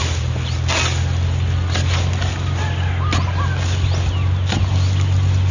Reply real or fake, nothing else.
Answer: real